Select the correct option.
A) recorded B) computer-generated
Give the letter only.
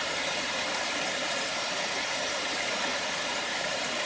B